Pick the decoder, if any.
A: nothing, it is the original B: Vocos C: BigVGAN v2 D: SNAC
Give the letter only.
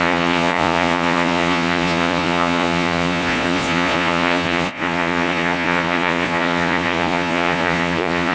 B